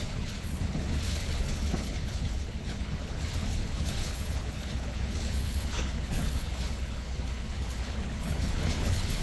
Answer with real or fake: fake